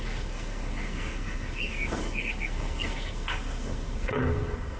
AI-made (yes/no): yes